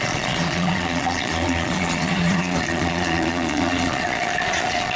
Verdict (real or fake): fake